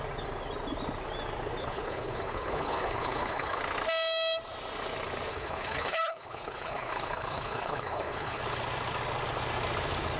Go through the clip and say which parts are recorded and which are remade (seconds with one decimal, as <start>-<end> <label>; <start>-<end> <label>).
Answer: 0.0-1.6 recorded; 1.6-3.6 remade; 3.6-5.3 recorded; 5.3-8.4 remade; 8.4-10.2 recorded

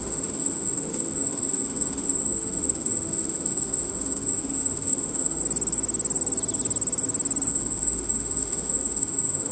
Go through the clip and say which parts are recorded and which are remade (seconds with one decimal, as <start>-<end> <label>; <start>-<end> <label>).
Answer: 0.0-5.4 remade; 5.4-7.5 recorded; 7.5-9.5 remade

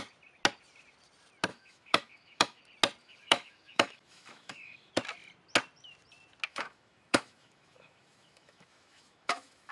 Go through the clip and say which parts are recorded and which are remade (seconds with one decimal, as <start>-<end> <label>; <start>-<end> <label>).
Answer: 0.0-1.5 recorded; 1.5-2.6 remade; 2.6-3.0 recorded; 3.0-4.9 remade; 4.9-6.5 recorded; 6.5-9.7 remade

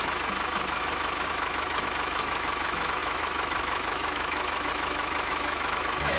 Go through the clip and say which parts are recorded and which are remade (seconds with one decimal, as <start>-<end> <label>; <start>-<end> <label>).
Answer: 0.0-6.2 remade

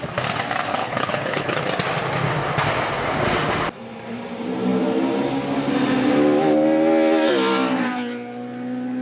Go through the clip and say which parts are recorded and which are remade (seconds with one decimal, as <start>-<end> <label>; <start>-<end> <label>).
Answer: 0.0-0.7 recorded; 0.7-1.6 remade; 1.6-9.0 recorded

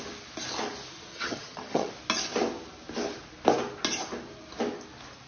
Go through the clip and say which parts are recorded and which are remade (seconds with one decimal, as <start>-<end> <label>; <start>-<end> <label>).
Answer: 0.0-1.1 recorded; 1.1-1.9 remade; 1.9-5.3 recorded